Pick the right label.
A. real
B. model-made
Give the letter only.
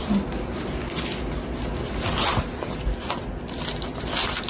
A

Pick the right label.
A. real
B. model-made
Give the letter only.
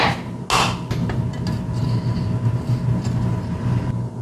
A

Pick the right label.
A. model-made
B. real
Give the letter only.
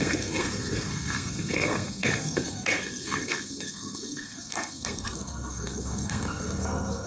A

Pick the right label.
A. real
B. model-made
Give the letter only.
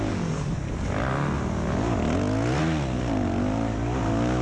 A